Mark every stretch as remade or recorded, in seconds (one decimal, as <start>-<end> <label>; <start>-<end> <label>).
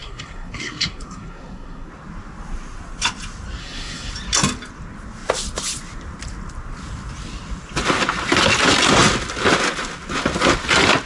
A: 0.0-1.9 remade; 1.9-3.6 recorded; 3.6-4.1 remade; 4.1-11.1 recorded